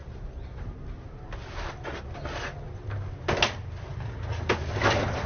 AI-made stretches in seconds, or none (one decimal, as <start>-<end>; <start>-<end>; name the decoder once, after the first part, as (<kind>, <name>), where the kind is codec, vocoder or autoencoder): none